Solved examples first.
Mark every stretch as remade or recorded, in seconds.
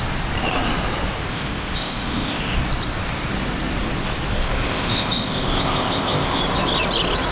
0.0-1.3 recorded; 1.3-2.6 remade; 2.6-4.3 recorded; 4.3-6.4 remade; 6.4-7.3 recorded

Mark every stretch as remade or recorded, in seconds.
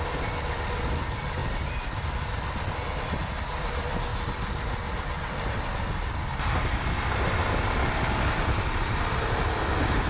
0.0-10.1 recorded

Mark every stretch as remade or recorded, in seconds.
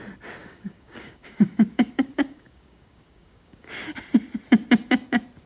0.0-0.4 recorded; 0.4-3.7 remade; 3.7-5.5 recorded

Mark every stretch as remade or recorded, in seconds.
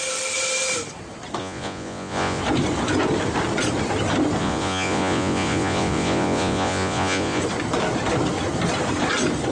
0.0-1.4 recorded; 1.4-2.4 remade; 2.4-4.4 recorded; 4.4-7.4 remade; 7.4-9.5 recorded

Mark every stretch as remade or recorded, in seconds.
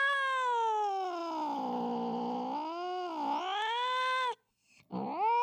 0.0-5.4 recorded